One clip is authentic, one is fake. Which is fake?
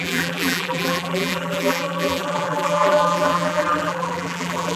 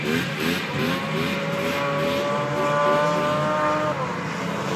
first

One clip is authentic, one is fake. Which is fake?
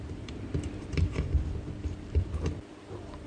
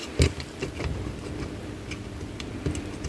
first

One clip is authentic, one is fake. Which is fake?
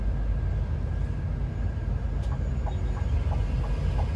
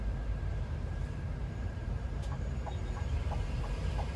second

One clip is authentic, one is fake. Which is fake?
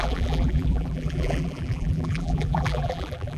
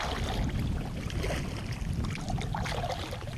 first